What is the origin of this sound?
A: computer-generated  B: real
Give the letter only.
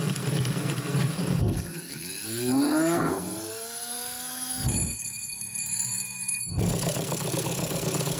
A